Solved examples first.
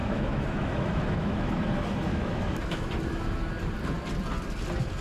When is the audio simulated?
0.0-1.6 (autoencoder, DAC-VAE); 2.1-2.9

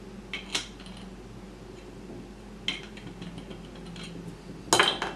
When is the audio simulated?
none

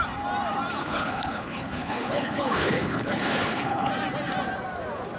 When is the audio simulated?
0.8-3.9 (codec, HILCodec)

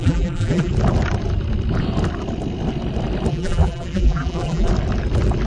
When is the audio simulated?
0.0-0.7 (vocoder, BigVGAN v2); 3.3-4.7

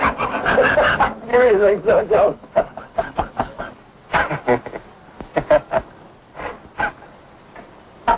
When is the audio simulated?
1.3-3.6 (codec, HILCodec)

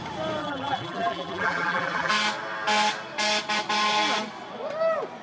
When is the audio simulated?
0.4-2.1 (vocoder, BigVGAN v2)

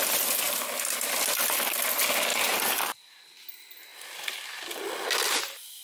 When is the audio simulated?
2.3-3.2 (vocoder, BigVGAN v2)